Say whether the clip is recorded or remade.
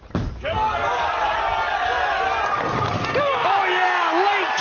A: recorded